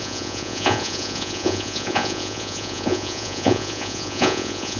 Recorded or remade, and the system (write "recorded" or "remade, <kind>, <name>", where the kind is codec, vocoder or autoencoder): remade, vocoder, Vocos